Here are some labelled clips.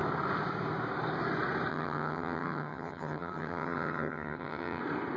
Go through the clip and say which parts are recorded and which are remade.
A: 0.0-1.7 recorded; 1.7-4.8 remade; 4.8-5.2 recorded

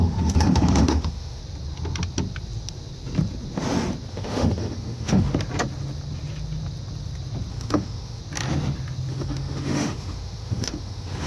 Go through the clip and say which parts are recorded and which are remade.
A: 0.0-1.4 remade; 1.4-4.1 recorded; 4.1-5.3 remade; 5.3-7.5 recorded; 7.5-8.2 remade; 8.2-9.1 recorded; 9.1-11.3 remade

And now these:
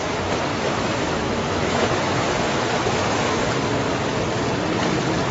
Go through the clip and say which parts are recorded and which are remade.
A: 0.0-0.5 recorded; 0.5-2.2 remade; 2.2-3.0 recorded; 3.0-3.5 remade; 3.5-5.3 recorded

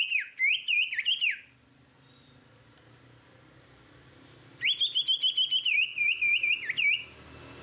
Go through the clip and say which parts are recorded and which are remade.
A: 0.0-7.6 recorded

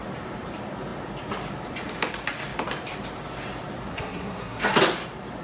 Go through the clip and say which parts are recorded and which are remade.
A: 0.0-3.9 recorded; 3.9-4.6 remade; 4.6-5.4 recorded

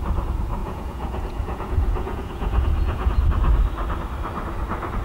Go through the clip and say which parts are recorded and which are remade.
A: 0.0-0.6 recorded; 0.6-3.2 remade; 3.2-5.0 recorded

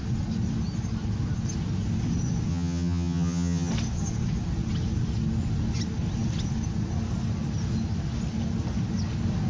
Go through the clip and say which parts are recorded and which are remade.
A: 0.0-2.5 recorded; 2.5-3.7 remade; 3.7-9.5 recorded